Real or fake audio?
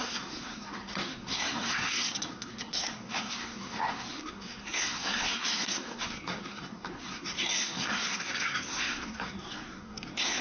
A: fake